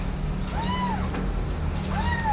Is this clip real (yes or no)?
yes